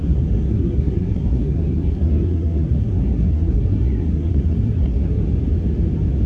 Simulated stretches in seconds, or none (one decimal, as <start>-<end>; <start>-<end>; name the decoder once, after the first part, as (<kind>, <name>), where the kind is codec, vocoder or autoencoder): 0.0-5.2 (codec, SNAC)